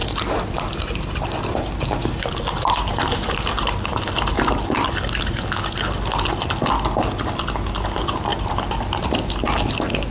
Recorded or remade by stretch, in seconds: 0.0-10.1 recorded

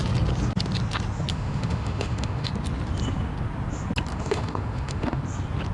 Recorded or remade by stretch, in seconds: 0.0-1.3 recorded; 1.3-2.5 remade; 2.5-4.1 recorded; 4.1-5.2 remade; 5.2-5.7 recorded

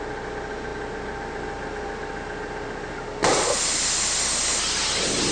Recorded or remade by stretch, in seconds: 0.0-5.3 recorded

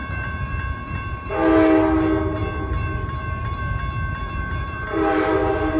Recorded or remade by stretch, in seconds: 0.0-1.3 remade; 1.3-2.4 recorded; 2.4-3.6 remade; 3.6-4.2 recorded; 4.2-5.8 remade

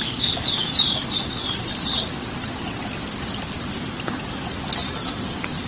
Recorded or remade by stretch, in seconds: 0.0-5.7 recorded